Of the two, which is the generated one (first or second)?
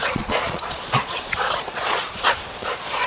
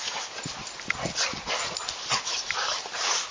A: first